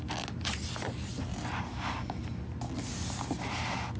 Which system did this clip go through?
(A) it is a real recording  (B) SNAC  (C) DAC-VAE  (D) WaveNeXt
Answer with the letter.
A